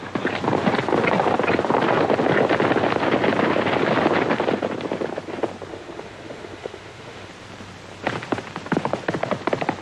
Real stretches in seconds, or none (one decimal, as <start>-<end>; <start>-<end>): 0.0-5.7; 7.3-9.8

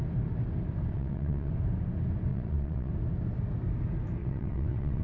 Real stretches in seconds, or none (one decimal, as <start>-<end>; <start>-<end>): 0.0-0.9; 1.5-2.3; 2.9-4.2

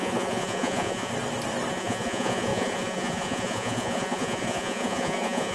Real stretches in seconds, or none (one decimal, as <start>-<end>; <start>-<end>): 1.1-1.7

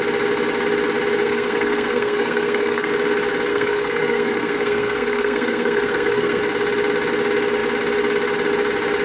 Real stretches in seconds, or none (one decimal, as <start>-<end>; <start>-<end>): 0.0-1.2; 2.9-3.5; 6.4-9.0

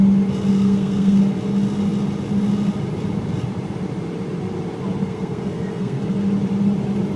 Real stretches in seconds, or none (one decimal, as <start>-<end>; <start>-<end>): 0.0-0.5; 1.2-5.0; 6.0-7.2

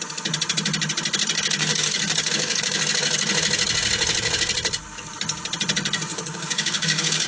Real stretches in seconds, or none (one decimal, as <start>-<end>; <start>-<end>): 0.0-1.7; 2.8-6.1